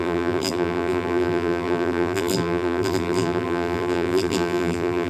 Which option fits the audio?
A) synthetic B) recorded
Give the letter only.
A